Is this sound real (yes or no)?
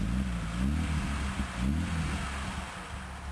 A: yes